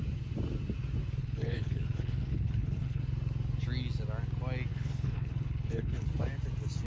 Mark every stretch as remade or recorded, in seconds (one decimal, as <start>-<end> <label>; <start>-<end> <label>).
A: 0.0-1.2 recorded; 1.2-3.0 remade; 3.0-4.7 recorded; 4.7-6.1 remade; 6.1-6.9 recorded